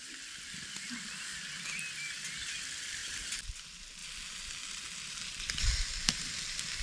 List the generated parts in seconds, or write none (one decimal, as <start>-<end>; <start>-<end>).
3.0-3.6; 4.0-5.8